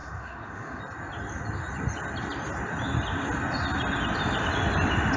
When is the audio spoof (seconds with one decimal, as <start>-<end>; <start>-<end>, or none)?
0.0-0.8